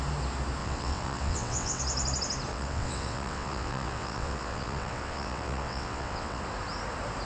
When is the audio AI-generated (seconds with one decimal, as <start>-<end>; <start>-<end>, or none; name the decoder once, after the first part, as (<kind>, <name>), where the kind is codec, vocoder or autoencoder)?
0.6-1.8 (vocoder, WaveNeXt); 2.5-6.4